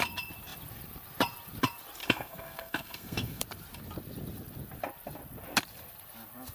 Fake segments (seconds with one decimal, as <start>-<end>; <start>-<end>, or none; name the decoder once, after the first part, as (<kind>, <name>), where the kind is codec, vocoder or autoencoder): 2.0-3.4 (codec, SNAC)